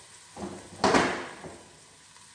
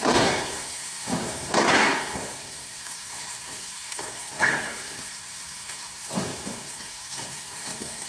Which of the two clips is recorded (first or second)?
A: first